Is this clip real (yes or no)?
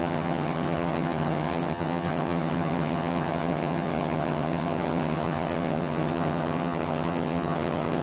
no